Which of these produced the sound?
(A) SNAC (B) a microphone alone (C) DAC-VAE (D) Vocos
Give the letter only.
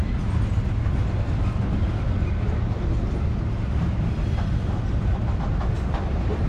B